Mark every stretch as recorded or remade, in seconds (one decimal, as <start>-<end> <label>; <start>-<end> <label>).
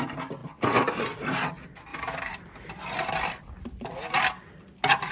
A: 0.0-0.4 recorded; 0.4-1.5 remade; 1.5-5.1 recorded